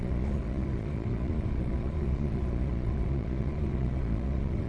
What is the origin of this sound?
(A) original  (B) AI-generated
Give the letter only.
B